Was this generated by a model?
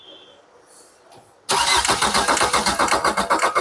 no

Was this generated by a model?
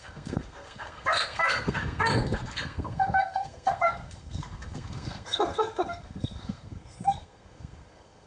yes